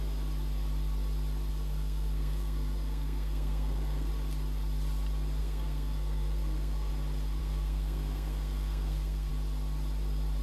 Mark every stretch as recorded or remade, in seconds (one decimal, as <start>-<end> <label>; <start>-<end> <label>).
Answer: 0.0-1.5 recorded; 1.5-4.1 remade; 4.1-5.4 recorded; 5.4-6.9 remade; 6.9-7.4 recorded; 7.4-9.3 remade; 9.3-10.4 recorded